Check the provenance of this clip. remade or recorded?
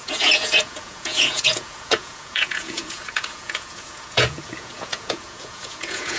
remade